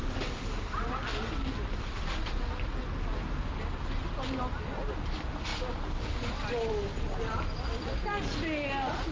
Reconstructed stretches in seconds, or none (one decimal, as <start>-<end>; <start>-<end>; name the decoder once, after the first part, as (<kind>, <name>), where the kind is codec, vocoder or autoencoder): none